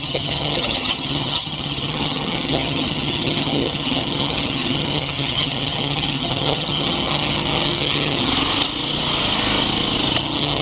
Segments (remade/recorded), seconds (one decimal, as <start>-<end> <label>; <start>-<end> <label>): 0.0-8.3 remade; 8.3-10.2 recorded; 10.2-10.6 remade